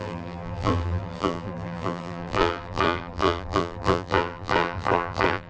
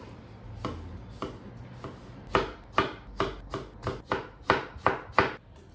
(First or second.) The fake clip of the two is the first